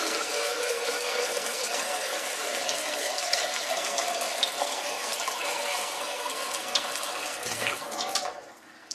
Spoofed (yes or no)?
yes